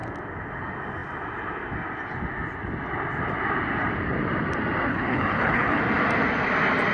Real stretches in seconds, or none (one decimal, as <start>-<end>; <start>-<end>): 0.0-4.9; 5.8-6.9